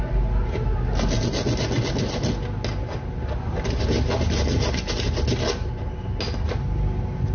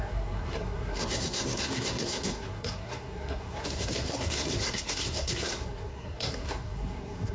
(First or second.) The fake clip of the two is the second